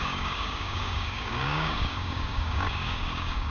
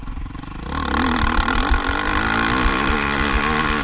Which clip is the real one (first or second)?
second